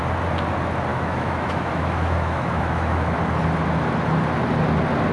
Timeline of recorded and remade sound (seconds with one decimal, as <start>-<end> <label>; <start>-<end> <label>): 0.0-0.9 recorded; 0.9-3.2 remade; 3.2-5.1 recorded